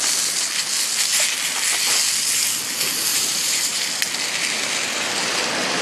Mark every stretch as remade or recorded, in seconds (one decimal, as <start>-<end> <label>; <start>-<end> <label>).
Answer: 0.0-3.1 recorded; 3.1-3.9 remade; 3.9-5.8 recorded